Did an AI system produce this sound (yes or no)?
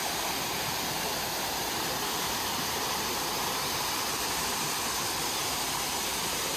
yes